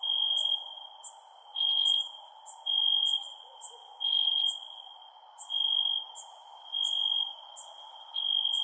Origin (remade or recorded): recorded